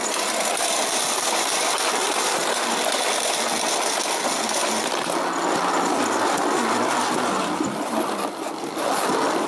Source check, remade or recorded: recorded